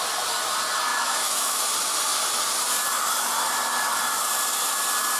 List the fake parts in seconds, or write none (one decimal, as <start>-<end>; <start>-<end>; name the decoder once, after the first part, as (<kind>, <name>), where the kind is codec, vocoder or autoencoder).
0.9-1.6 (autoencoder, DAC-VAE)